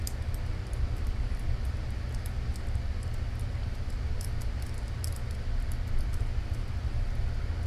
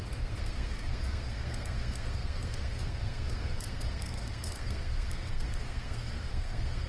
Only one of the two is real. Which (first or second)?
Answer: first